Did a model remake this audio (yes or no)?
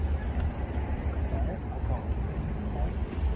no